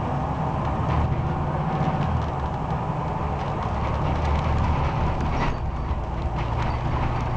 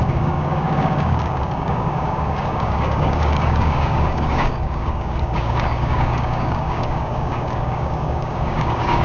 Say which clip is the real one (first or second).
first